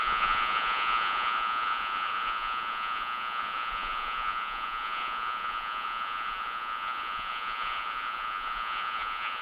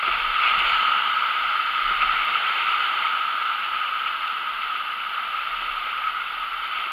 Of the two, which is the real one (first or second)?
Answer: second